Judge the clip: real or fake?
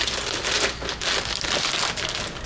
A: real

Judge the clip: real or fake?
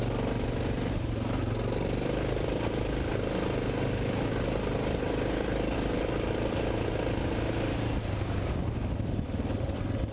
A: real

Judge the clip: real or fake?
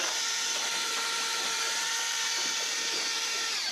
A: fake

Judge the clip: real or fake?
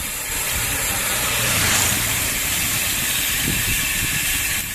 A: fake